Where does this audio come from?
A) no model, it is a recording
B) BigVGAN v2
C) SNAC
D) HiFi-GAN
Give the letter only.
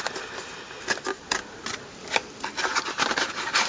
A